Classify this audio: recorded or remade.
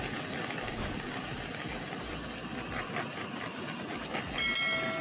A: recorded